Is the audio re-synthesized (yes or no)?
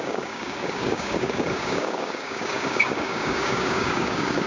yes